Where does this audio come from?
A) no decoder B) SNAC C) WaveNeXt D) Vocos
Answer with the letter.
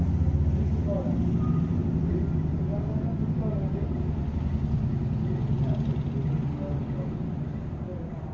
A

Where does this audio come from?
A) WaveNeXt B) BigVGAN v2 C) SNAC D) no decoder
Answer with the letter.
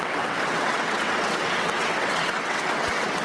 A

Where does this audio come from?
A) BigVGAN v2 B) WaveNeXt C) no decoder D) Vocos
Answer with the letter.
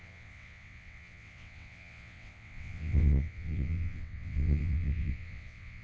B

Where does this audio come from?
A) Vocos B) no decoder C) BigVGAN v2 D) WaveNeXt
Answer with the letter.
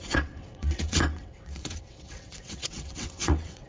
D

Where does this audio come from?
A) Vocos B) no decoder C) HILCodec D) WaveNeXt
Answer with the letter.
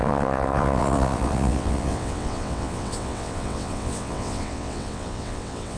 D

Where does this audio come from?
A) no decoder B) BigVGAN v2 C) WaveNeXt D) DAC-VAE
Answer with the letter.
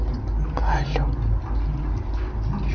A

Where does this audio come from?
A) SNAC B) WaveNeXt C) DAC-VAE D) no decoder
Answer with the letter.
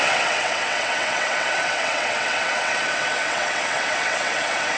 B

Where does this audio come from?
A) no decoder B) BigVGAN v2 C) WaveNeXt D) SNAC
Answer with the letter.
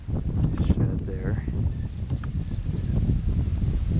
A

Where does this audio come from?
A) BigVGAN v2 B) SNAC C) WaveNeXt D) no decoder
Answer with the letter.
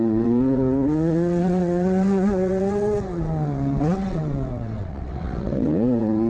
C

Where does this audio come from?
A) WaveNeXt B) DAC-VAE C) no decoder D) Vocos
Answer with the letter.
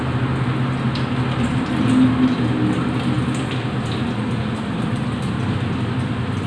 C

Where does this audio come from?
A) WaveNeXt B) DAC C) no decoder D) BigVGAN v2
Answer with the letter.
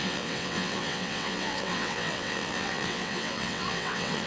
A